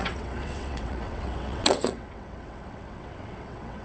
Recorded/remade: remade